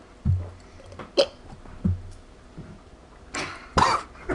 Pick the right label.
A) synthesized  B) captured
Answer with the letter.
B